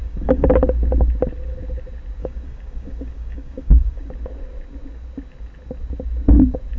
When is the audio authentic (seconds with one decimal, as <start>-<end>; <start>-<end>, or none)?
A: 0.5-2.2; 4.1-6.8